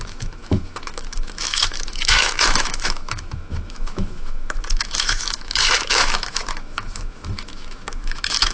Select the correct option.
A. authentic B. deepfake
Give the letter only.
B